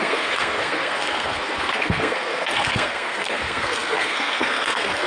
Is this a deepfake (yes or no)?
yes